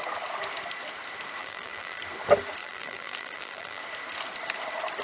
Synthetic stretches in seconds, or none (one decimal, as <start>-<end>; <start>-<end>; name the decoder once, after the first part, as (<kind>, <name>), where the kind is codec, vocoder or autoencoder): 1.4-2.0 (vocoder, BigVGAN v2); 2.6-3.8